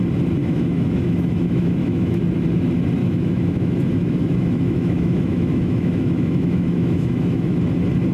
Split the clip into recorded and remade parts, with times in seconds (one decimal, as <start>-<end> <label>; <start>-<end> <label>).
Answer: 0.0-0.4 recorded; 0.4-2.2 remade; 2.2-3.0 recorded; 3.0-7.6 remade; 7.6-8.1 recorded